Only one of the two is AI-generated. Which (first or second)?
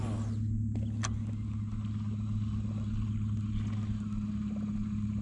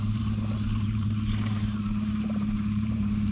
second